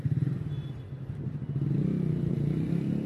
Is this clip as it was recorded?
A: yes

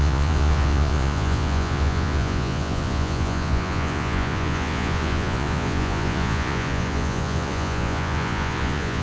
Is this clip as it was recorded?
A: no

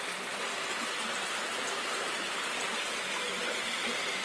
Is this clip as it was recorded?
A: yes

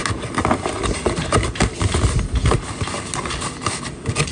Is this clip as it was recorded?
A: yes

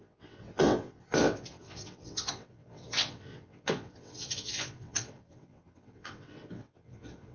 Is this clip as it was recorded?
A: no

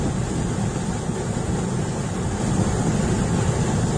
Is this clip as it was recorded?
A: yes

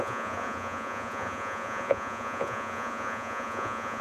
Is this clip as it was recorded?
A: no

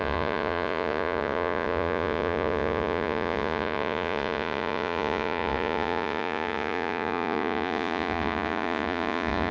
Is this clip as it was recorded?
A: no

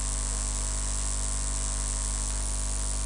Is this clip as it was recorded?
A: yes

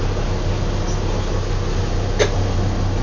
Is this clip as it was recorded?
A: yes